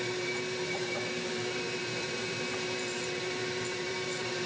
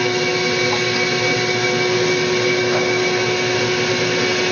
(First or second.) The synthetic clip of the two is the first